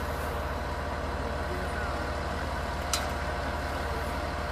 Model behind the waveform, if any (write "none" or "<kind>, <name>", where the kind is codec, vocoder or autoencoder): none